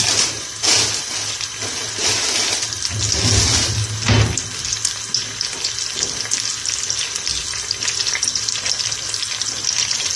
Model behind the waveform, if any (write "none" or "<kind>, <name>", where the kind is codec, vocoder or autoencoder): none